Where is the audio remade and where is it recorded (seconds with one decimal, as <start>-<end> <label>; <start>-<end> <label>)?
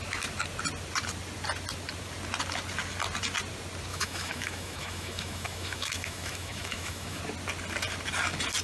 0.0-3.9 recorded; 3.9-7.2 remade; 7.2-8.6 recorded